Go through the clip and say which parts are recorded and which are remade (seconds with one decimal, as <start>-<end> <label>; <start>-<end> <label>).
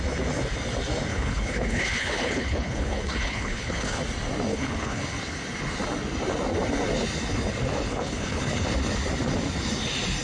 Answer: 0.0-1.1 recorded; 1.1-4.0 remade; 4.0-4.5 recorded; 4.5-5.0 remade; 5.0-7.9 recorded; 7.9-8.4 remade; 8.4-10.2 recorded